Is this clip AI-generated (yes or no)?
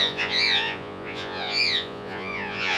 yes